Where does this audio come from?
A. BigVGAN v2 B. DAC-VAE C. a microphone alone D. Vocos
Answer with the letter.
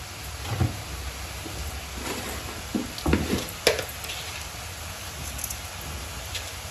C